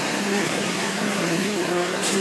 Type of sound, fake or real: fake